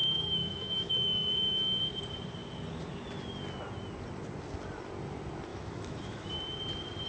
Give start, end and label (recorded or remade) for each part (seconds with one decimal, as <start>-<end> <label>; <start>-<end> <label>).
0.0-1.8 remade; 1.8-5.5 recorded; 5.5-6.3 remade; 6.3-7.1 recorded